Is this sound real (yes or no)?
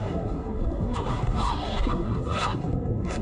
no